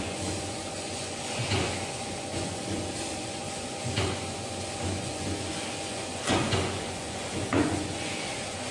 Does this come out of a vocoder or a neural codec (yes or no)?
yes